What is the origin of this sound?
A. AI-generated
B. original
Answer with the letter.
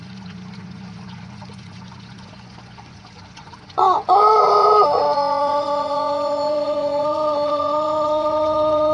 A